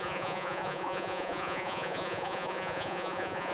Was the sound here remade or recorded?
remade